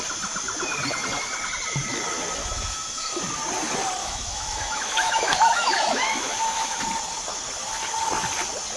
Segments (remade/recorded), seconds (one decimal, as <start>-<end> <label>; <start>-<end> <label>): 0.0-2.4 recorded; 2.4-3.2 remade; 3.2-4.0 recorded; 4.0-6.8 remade; 6.8-8.8 recorded